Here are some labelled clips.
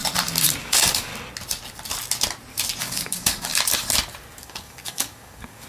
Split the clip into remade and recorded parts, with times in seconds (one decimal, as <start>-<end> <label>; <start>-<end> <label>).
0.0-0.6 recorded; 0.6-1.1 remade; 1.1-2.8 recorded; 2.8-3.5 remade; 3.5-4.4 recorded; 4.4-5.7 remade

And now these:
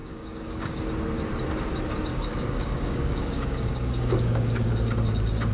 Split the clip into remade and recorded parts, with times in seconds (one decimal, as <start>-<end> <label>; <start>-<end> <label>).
0.0-0.9 remade; 0.9-2.1 recorded; 2.1-5.5 remade

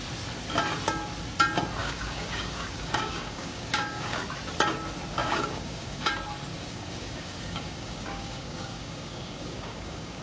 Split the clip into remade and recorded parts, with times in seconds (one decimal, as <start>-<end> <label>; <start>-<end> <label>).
0.0-1.8 recorded; 1.8-4.2 remade; 4.2-5.2 recorded; 5.2-6.1 remade; 6.1-6.5 recorded; 6.5-10.2 remade